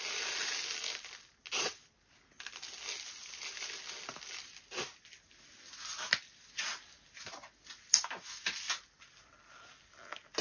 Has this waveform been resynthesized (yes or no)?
no